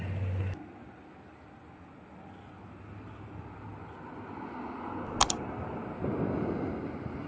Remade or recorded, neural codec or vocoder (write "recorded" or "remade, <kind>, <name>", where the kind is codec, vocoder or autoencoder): recorded